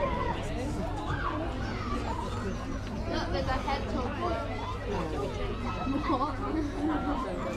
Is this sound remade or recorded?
recorded